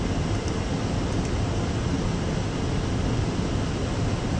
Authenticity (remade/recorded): recorded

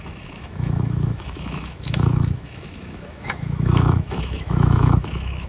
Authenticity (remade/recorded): remade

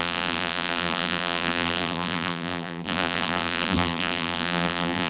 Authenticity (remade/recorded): remade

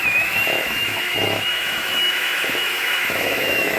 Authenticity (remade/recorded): remade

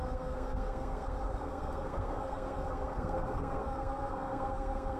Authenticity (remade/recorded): remade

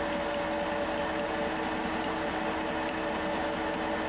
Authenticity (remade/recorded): recorded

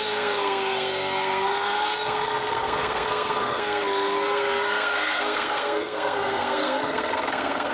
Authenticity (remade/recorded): remade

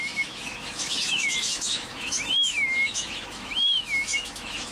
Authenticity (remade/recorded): remade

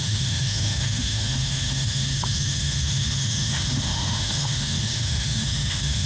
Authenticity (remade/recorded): remade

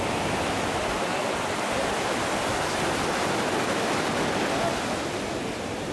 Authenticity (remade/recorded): recorded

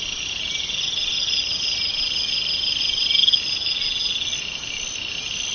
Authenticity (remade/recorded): recorded